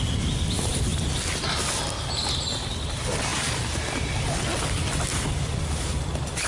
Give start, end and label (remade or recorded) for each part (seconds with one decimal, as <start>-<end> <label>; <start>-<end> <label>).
0.0-0.9 recorded; 0.9-1.6 remade; 1.6-6.5 recorded